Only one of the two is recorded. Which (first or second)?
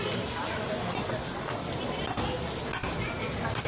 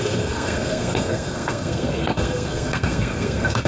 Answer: first